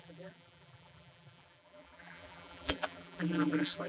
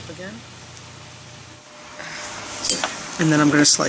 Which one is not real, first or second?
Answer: first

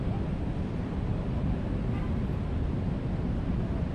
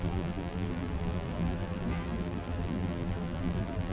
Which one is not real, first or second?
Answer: second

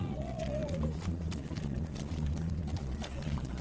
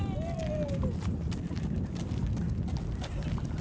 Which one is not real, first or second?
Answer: first